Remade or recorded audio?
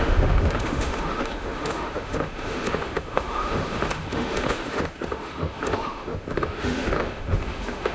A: remade